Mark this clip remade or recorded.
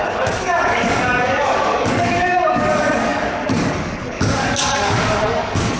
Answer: remade